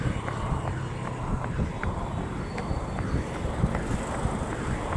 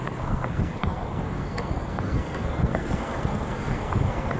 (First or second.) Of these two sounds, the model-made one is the second